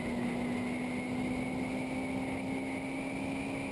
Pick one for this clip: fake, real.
real